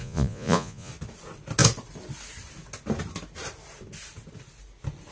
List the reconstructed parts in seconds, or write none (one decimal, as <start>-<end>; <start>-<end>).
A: 0.0-0.9